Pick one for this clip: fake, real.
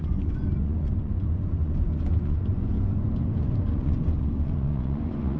fake